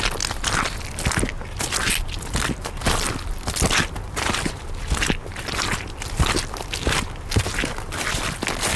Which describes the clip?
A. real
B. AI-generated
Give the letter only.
A